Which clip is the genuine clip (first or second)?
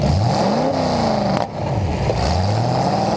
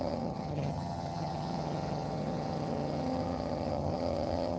first